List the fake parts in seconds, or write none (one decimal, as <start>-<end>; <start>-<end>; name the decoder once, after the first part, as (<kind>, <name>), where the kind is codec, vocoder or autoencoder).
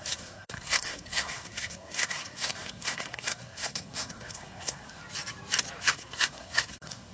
0.0-5.0 (codec, SNAC); 5.8-7.1